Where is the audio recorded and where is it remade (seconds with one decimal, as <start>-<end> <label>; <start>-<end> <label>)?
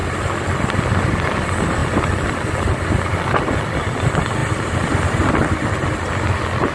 0.0-4.4 recorded; 4.4-5.3 remade; 5.3-6.7 recorded